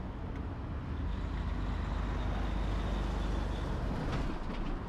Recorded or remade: recorded